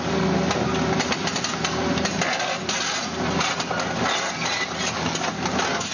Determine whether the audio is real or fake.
real